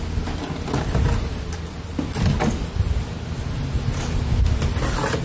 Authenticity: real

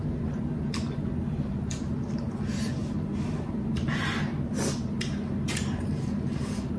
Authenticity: real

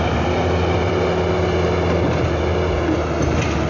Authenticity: real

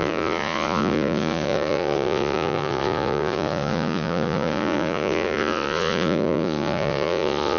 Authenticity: fake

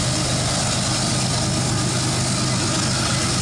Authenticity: real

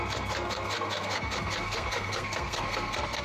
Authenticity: fake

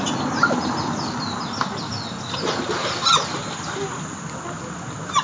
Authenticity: real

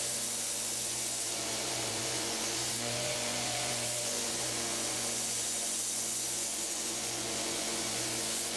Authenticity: fake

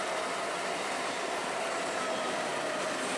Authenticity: real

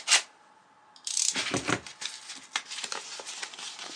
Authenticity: real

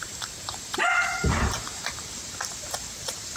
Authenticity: fake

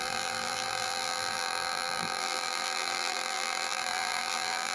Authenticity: fake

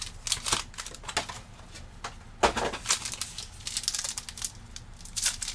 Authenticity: real